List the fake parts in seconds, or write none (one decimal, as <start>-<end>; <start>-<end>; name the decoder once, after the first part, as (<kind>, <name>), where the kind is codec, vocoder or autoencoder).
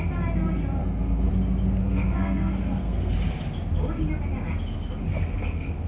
0.8-1.3 (codec, SNAC); 1.8-3.1; 5.1-5.9